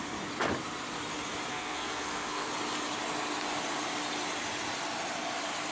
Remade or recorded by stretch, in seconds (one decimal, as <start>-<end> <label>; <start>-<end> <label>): 0.0-1.5 recorded; 1.5-2.5 remade; 2.5-5.7 recorded